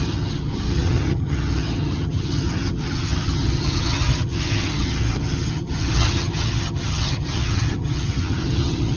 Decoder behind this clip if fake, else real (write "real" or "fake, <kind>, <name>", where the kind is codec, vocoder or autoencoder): fake, vocoder, HiFi-GAN